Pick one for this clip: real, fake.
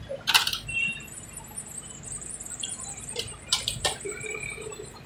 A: fake